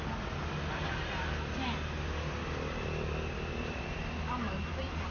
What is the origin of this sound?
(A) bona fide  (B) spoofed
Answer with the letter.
A